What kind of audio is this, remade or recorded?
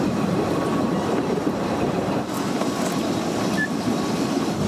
recorded